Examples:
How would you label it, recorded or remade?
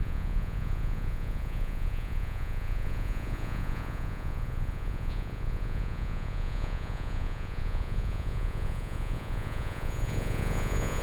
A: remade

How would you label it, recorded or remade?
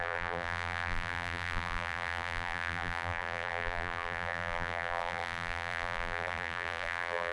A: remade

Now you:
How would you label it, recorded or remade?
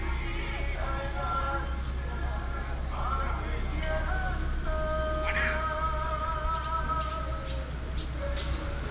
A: recorded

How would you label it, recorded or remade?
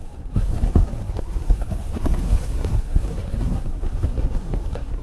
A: remade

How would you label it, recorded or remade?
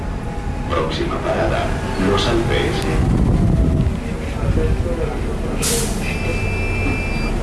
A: recorded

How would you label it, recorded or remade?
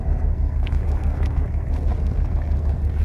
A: remade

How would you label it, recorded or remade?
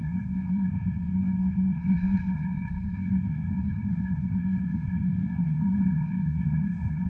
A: remade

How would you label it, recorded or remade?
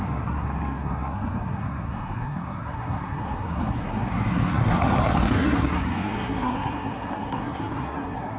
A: remade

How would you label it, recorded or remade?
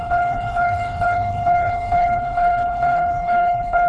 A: remade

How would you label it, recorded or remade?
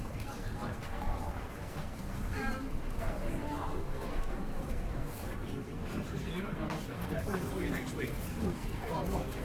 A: remade